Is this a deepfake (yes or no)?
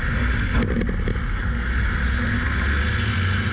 no